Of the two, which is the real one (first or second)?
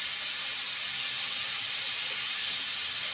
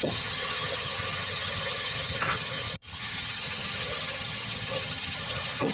first